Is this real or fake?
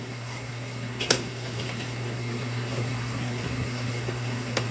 fake